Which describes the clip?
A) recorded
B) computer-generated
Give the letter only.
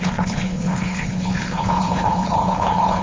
B